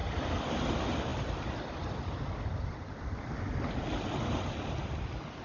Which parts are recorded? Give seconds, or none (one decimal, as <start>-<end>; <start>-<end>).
0.0-1.1; 3.5-5.4